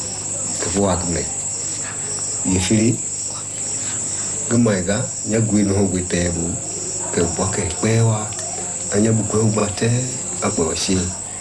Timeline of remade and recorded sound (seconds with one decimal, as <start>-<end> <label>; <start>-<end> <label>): 0.0-11.4 recorded